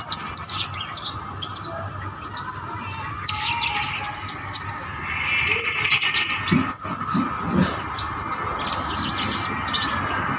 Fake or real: real